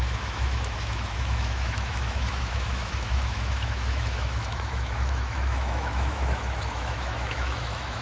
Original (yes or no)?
no